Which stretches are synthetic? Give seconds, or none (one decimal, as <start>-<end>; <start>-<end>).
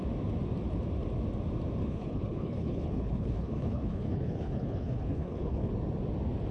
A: 1.8-5.7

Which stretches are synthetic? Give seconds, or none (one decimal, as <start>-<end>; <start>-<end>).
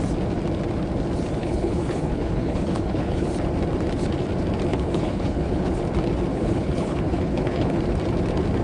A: 1.4-3.3; 4.7-5.8; 6.3-7.8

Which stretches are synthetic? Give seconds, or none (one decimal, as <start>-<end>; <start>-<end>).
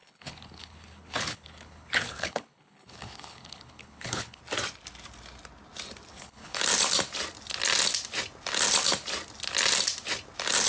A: 0.0-4.4; 6.1-6.6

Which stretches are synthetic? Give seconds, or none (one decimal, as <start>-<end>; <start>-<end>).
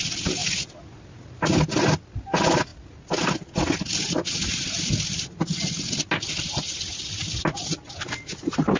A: none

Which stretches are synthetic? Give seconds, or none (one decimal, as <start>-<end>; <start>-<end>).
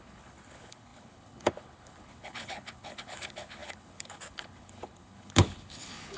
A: 0.0-6.2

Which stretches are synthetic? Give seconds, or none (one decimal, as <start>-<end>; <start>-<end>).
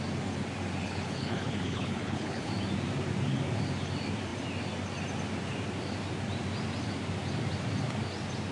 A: 0.8-2.5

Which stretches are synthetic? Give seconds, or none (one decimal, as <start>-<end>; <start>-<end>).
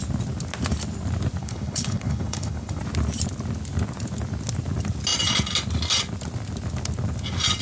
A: 1.4-2.8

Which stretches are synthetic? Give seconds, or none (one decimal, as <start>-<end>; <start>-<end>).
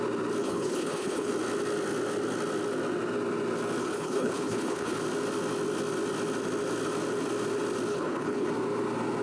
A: 0.4-1.3; 3.8-5.0; 7.9-8.5